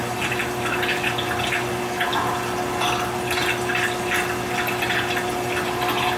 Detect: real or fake real